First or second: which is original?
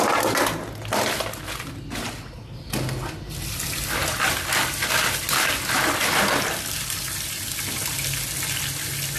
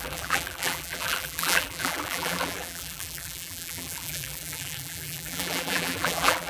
first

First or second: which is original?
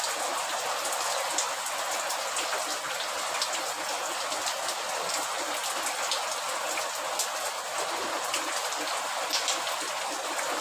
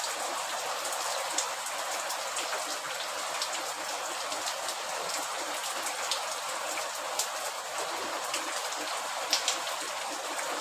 first